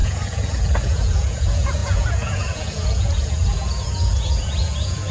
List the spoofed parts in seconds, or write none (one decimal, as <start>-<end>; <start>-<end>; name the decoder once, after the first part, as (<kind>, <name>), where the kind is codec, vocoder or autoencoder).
0.0-5.1 (vocoder, Vocos)